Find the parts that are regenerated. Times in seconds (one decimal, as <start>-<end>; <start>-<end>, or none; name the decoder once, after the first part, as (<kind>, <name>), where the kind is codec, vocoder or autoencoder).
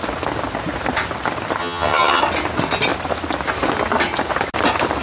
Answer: 1.6-2.2 (vocoder, HiFi-GAN)